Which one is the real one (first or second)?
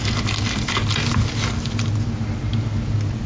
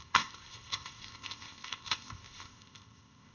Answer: first